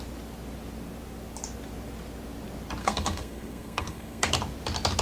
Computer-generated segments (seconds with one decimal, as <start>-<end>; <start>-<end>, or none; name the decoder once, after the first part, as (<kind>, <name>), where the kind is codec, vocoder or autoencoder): 2.8-4.3 (codec, SNAC)